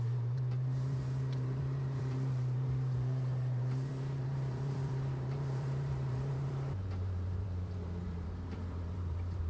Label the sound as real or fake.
fake